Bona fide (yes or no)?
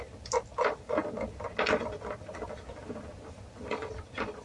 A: yes